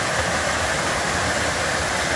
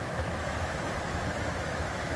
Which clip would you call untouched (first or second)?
first